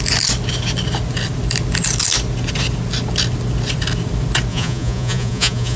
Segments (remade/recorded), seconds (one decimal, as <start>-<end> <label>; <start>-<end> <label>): 0.0-4.5 recorded; 4.5-5.8 remade